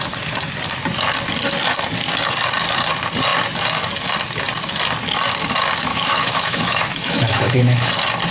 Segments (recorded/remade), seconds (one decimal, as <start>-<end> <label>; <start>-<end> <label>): 0.0-5.9 recorded; 5.9-7.9 remade; 7.9-8.3 recorded